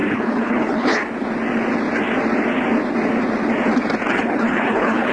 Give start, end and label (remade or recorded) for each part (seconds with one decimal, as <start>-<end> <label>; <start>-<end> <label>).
0.0-1.0 remade; 1.0-4.1 recorded; 4.1-5.1 remade